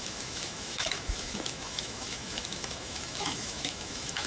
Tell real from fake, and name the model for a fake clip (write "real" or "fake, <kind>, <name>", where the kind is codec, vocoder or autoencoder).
fake, autoencoder, DAC-VAE